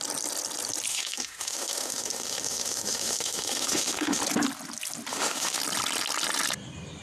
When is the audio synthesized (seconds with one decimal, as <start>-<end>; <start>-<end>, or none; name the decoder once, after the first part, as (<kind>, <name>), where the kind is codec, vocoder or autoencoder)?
0.9-4.2 (autoencoder, DAC-VAE); 5.1-5.6

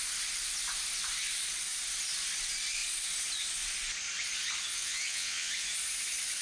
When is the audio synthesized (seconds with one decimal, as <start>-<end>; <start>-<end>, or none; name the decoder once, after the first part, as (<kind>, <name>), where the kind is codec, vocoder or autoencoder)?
4.7-5.5 (vocoder, WaveNeXt)

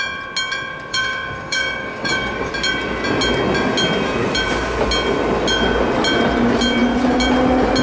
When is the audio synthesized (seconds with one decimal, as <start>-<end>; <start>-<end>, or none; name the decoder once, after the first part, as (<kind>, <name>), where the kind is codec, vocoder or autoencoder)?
0.9-2.5 (codec, DAC)